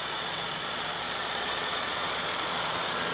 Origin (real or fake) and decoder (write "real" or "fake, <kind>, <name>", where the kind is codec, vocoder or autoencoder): fake, vocoder, Vocos